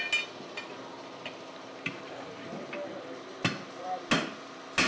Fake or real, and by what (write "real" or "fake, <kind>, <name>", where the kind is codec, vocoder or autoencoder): real